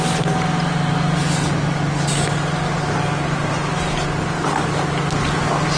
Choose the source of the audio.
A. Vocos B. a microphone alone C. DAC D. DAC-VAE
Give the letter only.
B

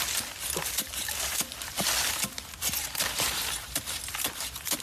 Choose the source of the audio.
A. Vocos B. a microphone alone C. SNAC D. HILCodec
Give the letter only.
B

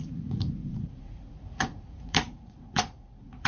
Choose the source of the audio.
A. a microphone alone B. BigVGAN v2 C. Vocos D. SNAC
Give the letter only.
C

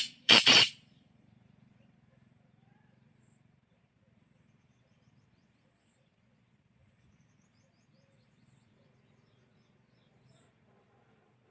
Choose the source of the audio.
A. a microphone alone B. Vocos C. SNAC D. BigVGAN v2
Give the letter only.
B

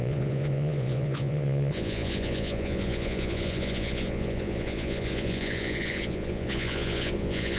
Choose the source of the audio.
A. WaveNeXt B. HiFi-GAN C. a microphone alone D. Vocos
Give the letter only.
D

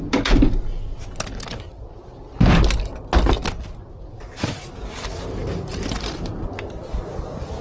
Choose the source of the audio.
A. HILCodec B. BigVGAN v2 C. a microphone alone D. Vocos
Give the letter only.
C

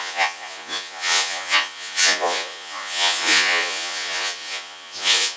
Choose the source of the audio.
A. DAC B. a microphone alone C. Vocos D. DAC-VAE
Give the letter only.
C